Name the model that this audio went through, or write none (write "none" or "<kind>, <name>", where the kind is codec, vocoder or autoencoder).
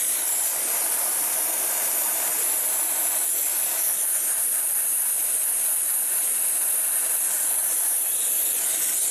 none